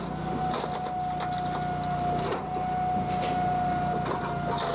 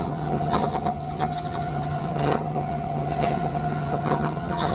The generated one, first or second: second